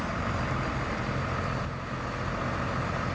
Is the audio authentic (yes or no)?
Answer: yes